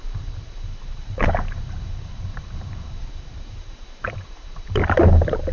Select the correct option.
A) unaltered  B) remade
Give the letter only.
B